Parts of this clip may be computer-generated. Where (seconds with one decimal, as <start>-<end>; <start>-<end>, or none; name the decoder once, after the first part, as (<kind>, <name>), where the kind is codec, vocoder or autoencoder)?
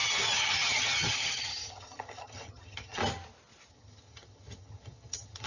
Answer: 0.0-3.0 (vocoder, HiFi-GAN); 3.7-5.5